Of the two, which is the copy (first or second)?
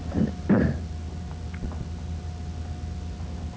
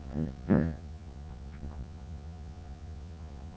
second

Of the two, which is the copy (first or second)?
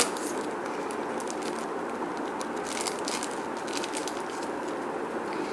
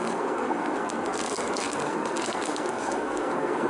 second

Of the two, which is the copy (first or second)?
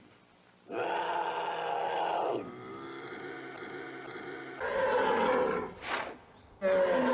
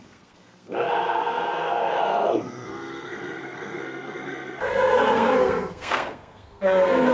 second